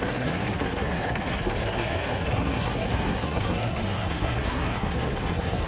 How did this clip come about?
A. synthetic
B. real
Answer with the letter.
A